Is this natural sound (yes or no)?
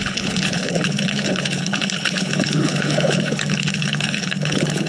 no